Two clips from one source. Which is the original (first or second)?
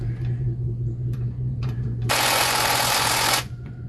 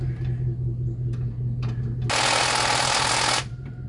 second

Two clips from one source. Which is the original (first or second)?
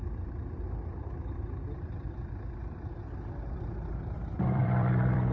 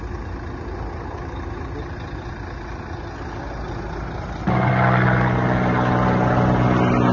second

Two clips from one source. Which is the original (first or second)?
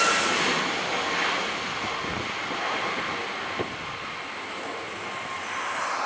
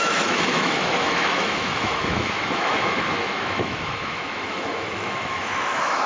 first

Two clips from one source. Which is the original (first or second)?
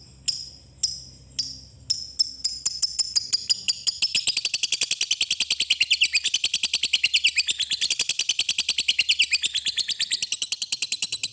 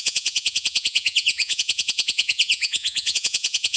first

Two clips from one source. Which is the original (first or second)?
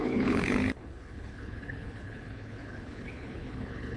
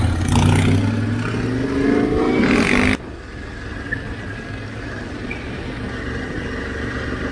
second